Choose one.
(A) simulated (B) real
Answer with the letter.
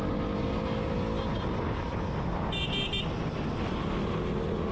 B